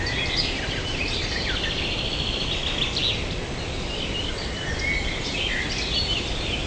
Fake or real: real